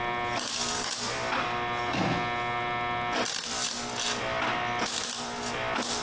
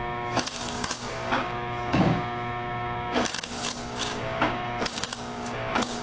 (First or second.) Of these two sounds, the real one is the first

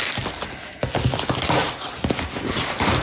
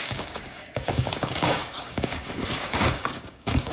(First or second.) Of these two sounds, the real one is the first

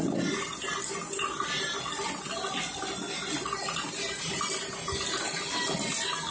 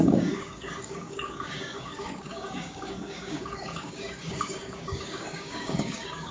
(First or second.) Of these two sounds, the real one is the first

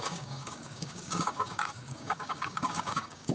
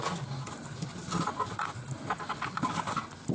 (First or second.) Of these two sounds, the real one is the second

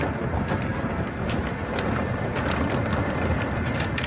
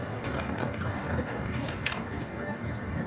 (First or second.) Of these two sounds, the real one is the first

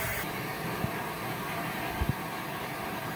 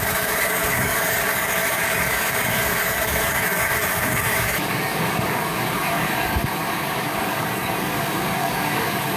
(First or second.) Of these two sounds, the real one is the first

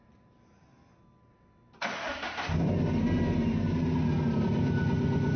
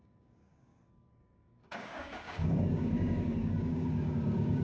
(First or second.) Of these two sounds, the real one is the first